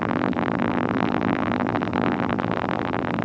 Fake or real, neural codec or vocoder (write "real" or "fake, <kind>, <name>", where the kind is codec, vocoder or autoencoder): fake, vocoder, BigVGAN v2